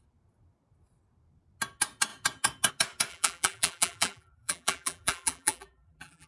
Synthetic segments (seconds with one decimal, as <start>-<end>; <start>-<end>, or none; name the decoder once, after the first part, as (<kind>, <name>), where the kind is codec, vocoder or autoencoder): 3.1-6.3 (vocoder, BigVGAN v2)